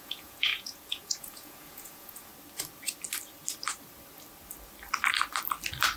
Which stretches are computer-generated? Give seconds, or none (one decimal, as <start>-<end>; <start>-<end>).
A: 0.0-2.3